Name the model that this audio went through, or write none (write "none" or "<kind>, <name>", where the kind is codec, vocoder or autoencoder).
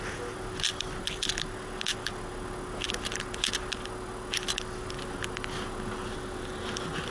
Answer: none